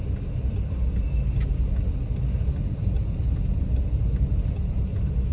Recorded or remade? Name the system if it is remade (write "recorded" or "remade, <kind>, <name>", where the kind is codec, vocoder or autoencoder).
recorded